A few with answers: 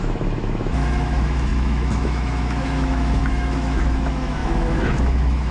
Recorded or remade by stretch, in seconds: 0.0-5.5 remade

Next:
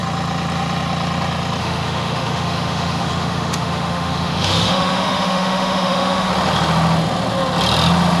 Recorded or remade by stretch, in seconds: 0.0-1.6 recorded; 1.6-6.3 remade; 6.3-8.2 recorded

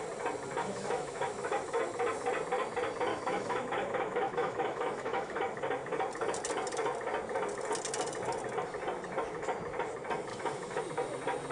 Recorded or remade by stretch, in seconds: 0.0-0.6 recorded; 0.6-1.8 remade; 1.8-3.1 recorded; 3.1-5.4 remade; 5.4-10.3 recorded; 10.3-10.8 remade; 10.8-11.5 recorded

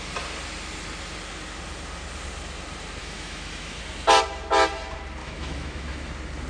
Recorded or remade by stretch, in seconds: 0.0-3.0 recorded; 3.0-3.8 remade; 3.8-5.2 recorded; 5.2-6.1 remade; 6.1-6.5 recorded

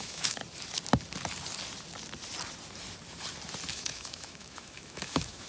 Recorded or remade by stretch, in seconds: 0.0-0.4 remade; 0.4-3.7 recorded; 3.7-5.5 remade

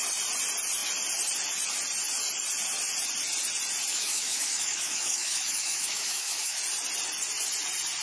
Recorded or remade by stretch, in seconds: 0.0-3.9 recorded; 3.9-6.6 remade; 6.6-8.0 recorded

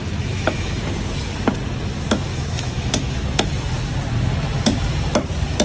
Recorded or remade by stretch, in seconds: 0.0-0.8 remade; 0.8-2.3 recorded; 2.3-3.2 remade; 3.2-5.6 recorded